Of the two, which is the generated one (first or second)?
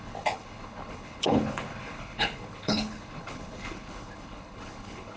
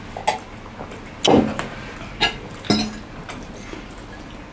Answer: first